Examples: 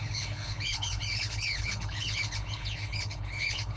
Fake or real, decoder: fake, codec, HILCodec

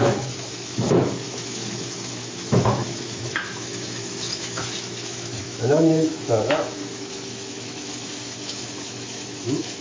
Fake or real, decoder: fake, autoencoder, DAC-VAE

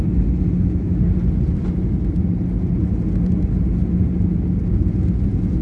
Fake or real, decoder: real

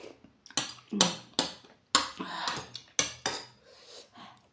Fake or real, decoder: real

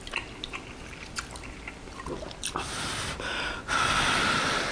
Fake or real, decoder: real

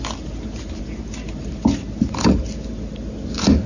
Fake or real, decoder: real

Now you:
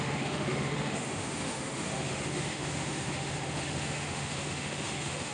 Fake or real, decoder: fake, autoencoder, DAC-VAE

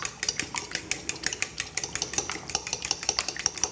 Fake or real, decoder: real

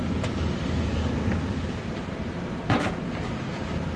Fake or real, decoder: real